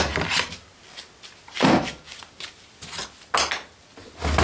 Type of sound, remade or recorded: recorded